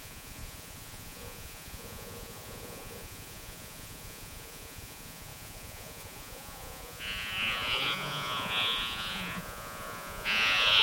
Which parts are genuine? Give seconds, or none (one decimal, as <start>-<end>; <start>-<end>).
none